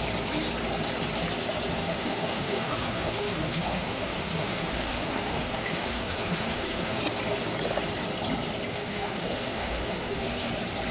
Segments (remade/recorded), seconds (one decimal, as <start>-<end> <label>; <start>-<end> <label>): 0.0-1.7 recorded; 1.7-7.0 remade; 7.0-8.7 recorded; 8.7-10.5 remade; 10.5-10.9 recorded